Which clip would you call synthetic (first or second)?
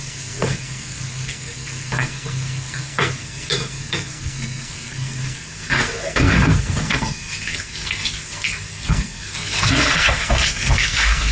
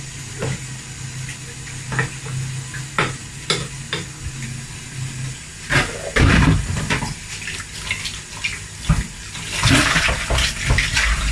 first